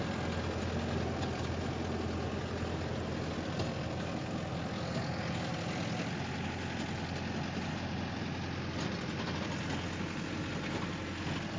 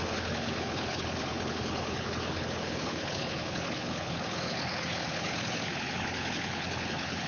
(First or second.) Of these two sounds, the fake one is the second